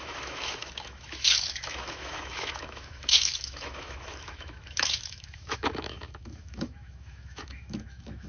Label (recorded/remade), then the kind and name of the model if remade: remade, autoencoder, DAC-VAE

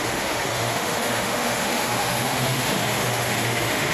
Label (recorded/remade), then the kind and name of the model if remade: remade, autoencoder, DAC-VAE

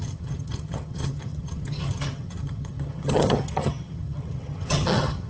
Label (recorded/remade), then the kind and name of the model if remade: remade, vocoder, HiFi-GAN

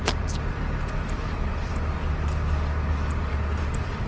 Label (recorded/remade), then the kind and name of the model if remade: recorded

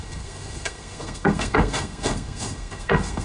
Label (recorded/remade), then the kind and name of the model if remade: remade, codec, SNAC